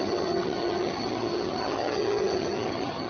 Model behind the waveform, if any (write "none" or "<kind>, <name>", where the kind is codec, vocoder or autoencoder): vocoder, HiFi-GAN